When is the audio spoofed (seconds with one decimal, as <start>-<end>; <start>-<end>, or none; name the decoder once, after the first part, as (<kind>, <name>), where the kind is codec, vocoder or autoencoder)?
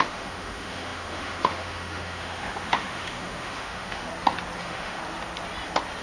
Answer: 0.0-4.1 (autoencoder, DAC-VAE); 4.6-5.0